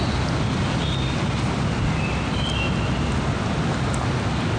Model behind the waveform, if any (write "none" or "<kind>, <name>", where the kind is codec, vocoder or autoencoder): none